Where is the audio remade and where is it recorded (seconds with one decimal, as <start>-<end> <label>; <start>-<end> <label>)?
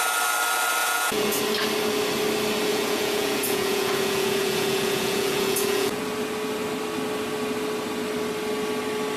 0.0-0.8 recorded; 0.8-1.4 remade; 1.4-2.7 recorded; 2.7-6.0 remade; 6.0-9.2 recorded